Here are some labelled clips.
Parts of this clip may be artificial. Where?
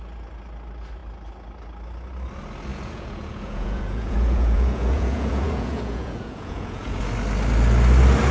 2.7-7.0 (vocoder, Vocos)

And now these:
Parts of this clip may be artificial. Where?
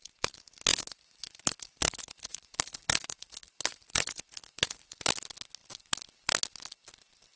0.7-5.1 (vocoder, Vocos)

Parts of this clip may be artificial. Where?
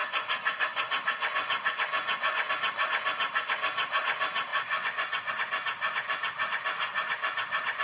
0.0-2.5 (vocoder, Vocos); 4.5-5.3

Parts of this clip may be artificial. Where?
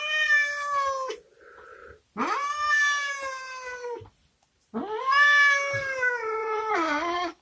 6.4-7.4 (vocoder, Vocos)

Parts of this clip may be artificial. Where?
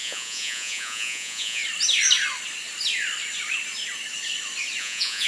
0.0-1.6 (vocoder, Vocos); 4.8-5.3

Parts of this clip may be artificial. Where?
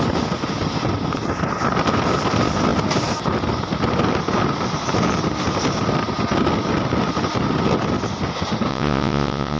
8.7-9.6 (vocoder, Vocos)